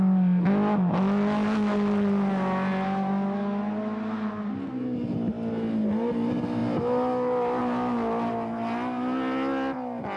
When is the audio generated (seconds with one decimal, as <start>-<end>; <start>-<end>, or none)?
none